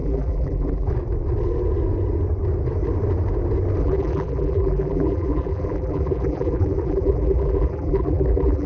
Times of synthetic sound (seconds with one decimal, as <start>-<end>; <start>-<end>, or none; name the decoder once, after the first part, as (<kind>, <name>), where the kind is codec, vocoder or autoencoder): 0.0-0.9 (vocoder, BigVGAN v2); 3.8-8.7